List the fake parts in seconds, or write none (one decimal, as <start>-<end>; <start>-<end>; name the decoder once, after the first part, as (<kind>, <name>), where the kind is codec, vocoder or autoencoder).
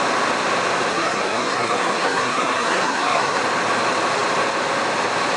0.9-3.4 (codec, SNAC)